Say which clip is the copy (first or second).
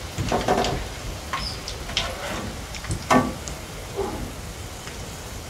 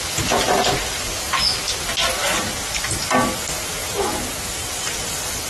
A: first